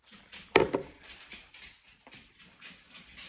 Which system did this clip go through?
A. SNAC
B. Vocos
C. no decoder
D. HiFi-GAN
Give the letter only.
C